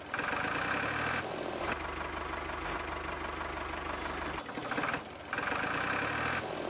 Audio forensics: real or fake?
real